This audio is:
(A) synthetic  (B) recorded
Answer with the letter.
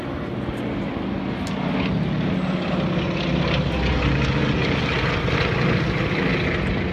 B